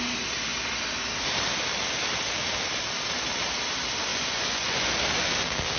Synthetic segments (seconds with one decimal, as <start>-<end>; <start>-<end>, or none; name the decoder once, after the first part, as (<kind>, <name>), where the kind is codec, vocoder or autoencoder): 4.1-4.9 (vocoder, Vocos)